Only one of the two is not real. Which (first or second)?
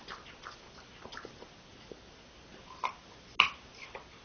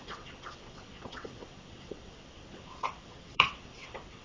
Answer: second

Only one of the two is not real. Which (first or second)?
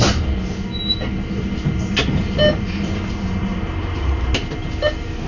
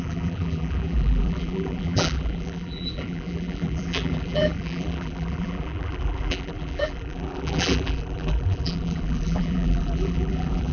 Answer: second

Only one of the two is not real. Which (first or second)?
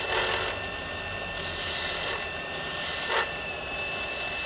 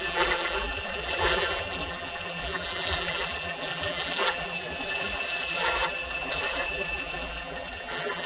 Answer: second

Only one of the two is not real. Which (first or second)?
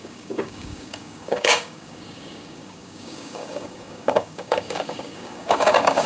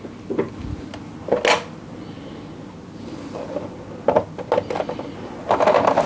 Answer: first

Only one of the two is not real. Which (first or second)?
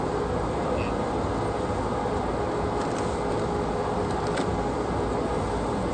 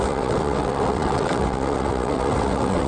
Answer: second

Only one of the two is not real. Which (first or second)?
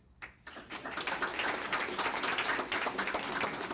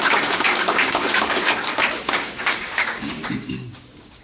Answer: second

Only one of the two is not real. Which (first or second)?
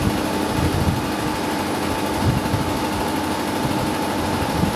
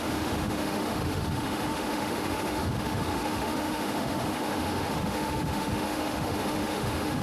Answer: second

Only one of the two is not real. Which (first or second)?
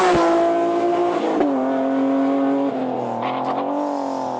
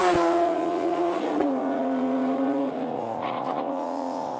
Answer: second